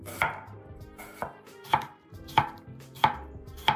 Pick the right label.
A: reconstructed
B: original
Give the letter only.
A